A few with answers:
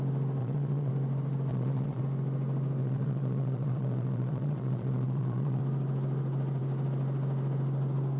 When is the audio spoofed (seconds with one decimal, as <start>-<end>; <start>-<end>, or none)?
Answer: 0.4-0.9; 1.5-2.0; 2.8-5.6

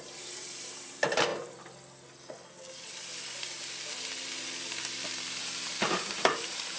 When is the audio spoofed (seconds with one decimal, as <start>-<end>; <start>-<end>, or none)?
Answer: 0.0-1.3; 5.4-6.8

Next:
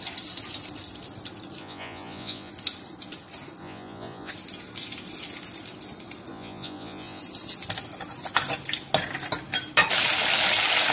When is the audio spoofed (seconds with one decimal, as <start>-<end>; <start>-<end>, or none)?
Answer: 1.6-2.5; 3.6-4.3; 6.3-7.2

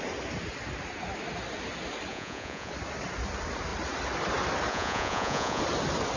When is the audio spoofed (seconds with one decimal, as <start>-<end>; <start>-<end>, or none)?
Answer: 2.1-2.7; 4.7-5.6